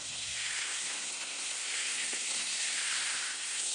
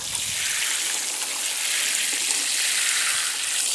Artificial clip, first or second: first